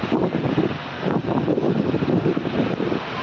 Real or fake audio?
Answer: real